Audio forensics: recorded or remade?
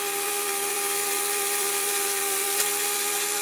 remade